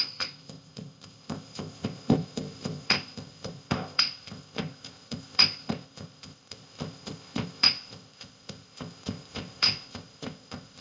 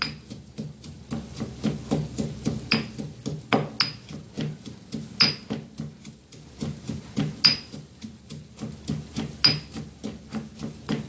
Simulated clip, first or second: first